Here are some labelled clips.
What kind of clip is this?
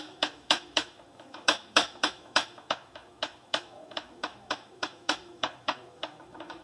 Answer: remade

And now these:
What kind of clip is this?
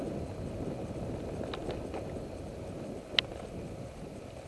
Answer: recorded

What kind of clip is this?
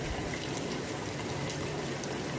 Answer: recorded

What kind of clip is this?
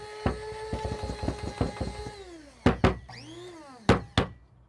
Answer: recorded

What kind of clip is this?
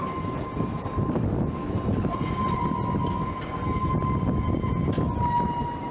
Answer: recorded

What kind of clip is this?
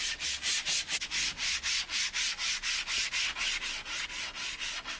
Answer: recorded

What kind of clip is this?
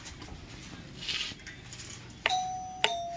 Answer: recorded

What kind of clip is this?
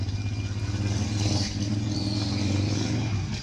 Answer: recorded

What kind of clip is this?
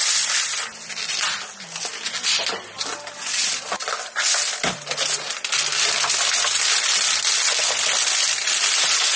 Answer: recorded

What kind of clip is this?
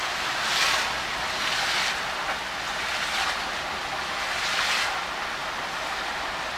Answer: recorded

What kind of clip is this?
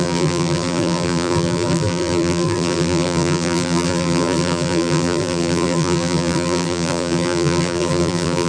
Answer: remade